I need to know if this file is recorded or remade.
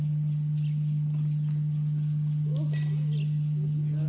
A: recorded